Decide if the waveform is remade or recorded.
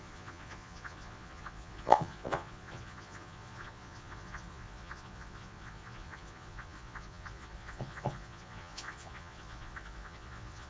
remade